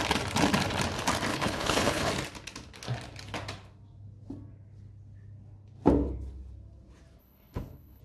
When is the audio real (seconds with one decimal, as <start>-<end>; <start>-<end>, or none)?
0.0-1.3; 2.1-7.2